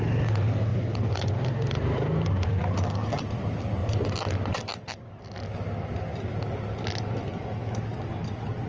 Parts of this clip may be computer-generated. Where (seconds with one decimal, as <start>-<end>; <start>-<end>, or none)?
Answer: none

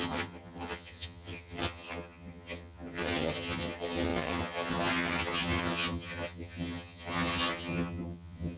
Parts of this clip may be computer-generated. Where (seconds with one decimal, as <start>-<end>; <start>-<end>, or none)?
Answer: 0.0-8.6

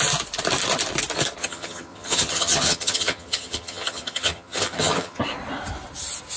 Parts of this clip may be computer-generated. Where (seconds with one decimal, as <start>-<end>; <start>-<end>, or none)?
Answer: 1.4-5.2

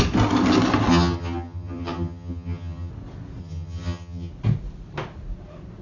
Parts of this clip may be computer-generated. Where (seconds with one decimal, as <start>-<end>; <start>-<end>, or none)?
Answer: 0.9-2.9; 3.4-4.3

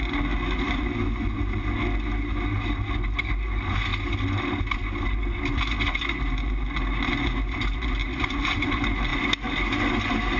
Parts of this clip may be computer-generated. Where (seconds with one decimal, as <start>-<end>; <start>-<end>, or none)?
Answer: none

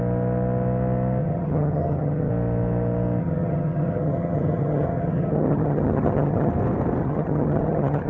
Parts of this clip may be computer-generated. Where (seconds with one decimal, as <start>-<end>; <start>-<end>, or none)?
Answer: 1.2-2.3; 3.2-6.5; 7.0-8.1

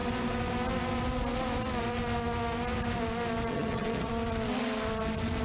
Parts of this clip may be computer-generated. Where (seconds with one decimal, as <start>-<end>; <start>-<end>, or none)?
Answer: 3.5-4.1